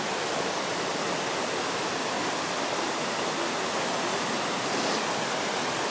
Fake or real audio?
real